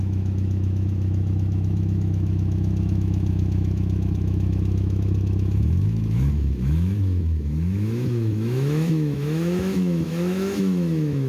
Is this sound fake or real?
fake